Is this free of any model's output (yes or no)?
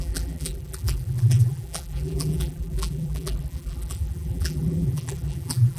no